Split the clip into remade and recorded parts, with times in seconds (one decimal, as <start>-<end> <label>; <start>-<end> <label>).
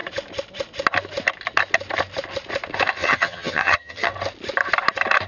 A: 0.0-3.0 recorded; 3.0-4.1 remade; 4.1-5.3 recorded